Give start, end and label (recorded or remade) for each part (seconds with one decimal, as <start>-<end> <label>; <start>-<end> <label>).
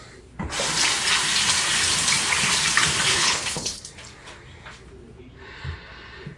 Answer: 0.0-3.1 recorded; 3.1-3.8 remade; 3.8-6.4 recorded